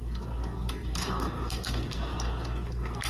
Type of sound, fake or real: fake